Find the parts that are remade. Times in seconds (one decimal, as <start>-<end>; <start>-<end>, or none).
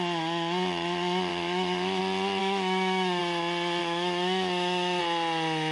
1.3-2.0; 2.4-3.2; 3.8-5.0